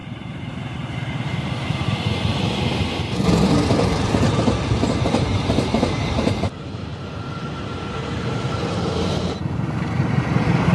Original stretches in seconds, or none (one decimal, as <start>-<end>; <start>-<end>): none